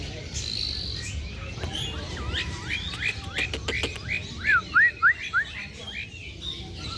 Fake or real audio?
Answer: real